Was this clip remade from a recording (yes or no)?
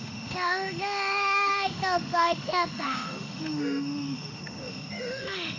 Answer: yes